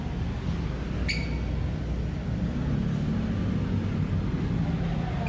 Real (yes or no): yes